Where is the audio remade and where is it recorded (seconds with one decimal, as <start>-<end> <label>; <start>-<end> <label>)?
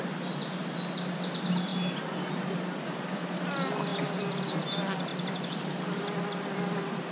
0.0-7.1 recorded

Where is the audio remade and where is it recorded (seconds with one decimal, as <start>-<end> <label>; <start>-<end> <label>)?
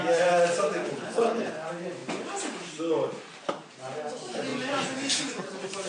0.0-0.8 recorded; 0.8-1.5 remade; 1.5-5.9 recorded